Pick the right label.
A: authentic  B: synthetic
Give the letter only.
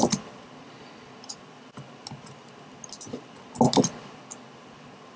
A